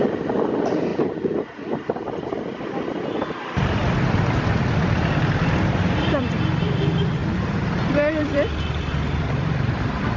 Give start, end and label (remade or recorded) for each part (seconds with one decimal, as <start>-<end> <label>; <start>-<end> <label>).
0.0-0.9 remade; 0.9-1.7 recorded; 1.7-3.8 remade; 3.8-6.0 recorded; 6.0-10.2 remade